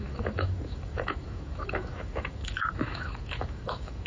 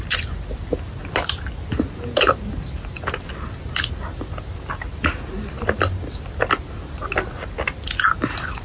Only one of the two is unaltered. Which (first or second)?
second